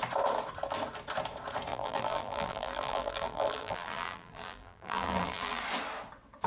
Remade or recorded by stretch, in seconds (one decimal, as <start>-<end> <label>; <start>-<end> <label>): 0.0-1.7 recorded; 1.7-5.6 remade; 5.6-6.5 recorded

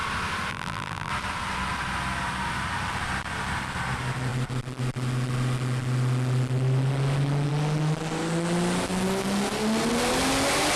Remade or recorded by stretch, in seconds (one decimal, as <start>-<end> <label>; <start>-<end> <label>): 0.0-0.5 recorded; 0.5-1.1 remade; 1.1-10.8 recorded